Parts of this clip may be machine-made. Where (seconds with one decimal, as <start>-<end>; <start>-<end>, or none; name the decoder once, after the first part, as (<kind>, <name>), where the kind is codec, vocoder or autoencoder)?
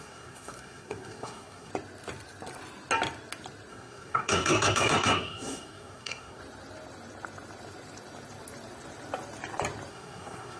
0.0-1.7 (codec, SNAC); 3.7-6.4; 9.9-10.6